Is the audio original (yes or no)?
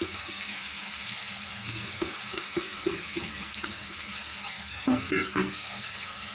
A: no